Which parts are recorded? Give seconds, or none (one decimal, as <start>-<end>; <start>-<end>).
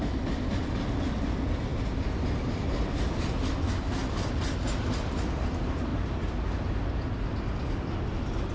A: 0.0-8.5